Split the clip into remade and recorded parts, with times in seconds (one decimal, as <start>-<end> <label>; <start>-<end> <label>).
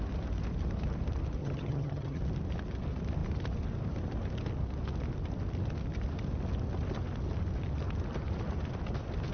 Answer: 0.0-1.4 recorded; 1.4-2.2 remade; 2.2-9.3 recorded